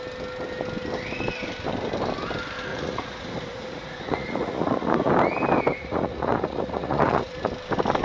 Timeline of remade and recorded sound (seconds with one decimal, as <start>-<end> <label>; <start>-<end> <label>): 0.0-2.7 recorded; 2.7-5.1 remade; 5.1-5.7 recorded; 5.7-7.5 remade; 7.5-8.0 recorded